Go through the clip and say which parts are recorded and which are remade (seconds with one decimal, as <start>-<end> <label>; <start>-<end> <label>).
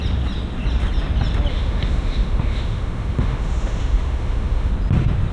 0.0-1.5 recorded; 1.5-4.7 remade; 4.7-5.3 recorded